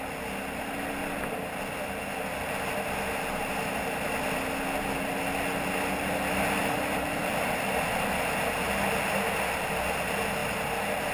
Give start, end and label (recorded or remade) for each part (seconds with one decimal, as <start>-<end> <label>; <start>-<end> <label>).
0.0-6.6 recorded; 6.6-8.4 remade; 8.4-11.1 recorded